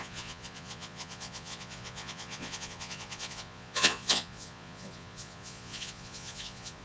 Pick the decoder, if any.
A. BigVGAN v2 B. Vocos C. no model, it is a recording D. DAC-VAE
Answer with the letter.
B